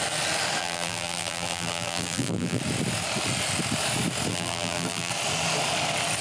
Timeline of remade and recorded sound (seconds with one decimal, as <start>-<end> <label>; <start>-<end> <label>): 0.0-0.6 recorded; 0.6-2.6 remade; 2.6-4.3 recorded; 4.3-5.1 remade; 5.1-6.2 recorded

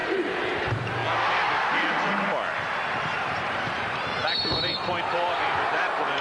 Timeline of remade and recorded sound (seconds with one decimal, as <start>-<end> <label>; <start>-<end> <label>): 0.0-1.0 remade; 1.0-2.8 recorded; 2.8-6.2 remade

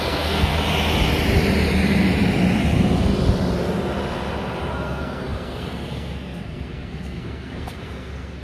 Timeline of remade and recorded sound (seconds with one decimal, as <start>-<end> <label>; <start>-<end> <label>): 0.0-0.5 remade; 0.5-4.7 recorded; 4.7-8.4 remade